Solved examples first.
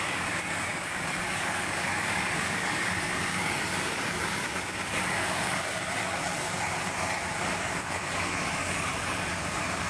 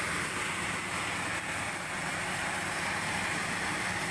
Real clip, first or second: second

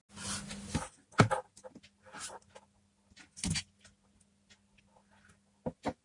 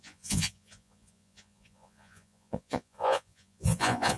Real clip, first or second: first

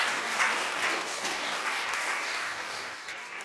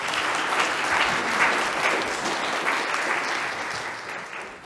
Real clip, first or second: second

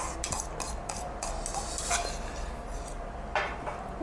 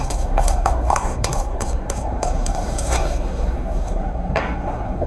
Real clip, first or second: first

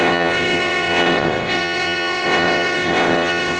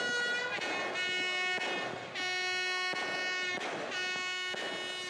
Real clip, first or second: second